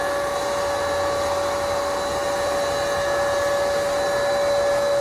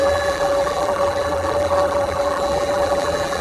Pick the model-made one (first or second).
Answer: second